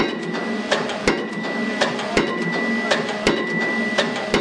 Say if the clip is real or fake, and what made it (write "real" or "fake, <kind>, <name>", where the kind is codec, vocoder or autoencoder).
real